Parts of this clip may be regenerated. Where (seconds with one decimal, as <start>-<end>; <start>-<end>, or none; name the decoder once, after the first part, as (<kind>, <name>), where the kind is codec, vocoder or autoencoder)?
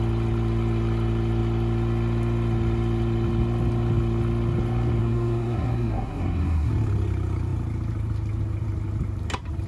5.0-6.7 (codec, SNAC)